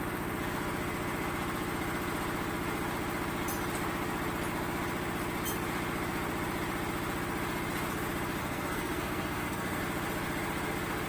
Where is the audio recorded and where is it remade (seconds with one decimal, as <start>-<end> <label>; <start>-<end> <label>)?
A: 0.0-8.4 recorded; 8.4-9.8 remade; 9.8-11.1 recorded